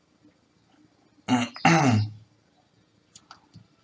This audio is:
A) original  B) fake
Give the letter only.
A